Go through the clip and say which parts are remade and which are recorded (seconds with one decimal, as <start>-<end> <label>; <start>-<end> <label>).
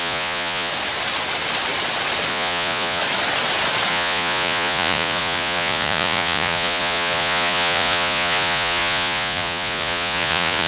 0.0-0.7 remade; 0.7-2.3 recorded; 2.3-3.0 remade; 3.0-3.9 recorded; 3.9-10.7 remade